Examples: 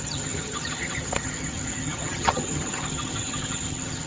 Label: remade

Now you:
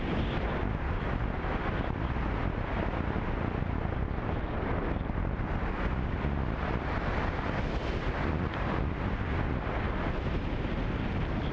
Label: recorded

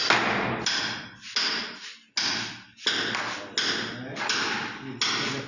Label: recorded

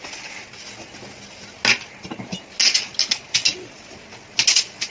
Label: recorded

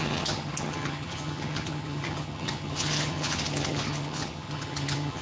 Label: remade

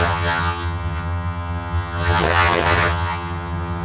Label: remade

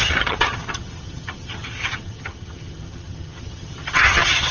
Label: remade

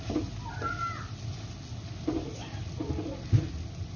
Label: recorded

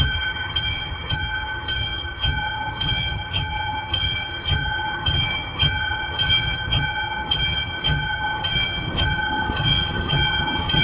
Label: remade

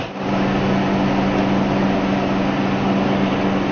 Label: recorded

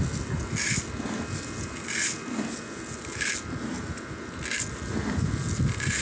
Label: recorded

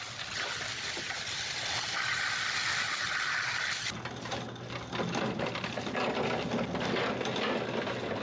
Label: recorded